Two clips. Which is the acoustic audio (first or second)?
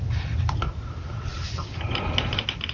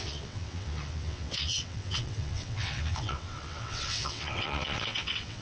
first